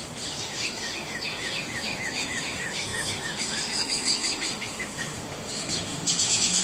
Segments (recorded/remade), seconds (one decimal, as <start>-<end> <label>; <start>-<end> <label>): 0.0-6.6 remade